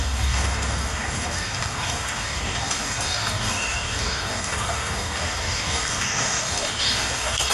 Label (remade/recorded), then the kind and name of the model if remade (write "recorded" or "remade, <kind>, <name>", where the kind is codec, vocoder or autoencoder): remade, codec, DAC